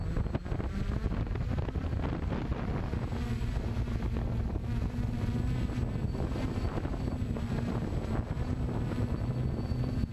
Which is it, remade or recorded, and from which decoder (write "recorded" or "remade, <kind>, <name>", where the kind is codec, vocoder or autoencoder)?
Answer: recorded